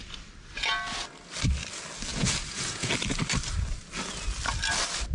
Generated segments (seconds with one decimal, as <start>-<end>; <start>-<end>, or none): 2.1-2.9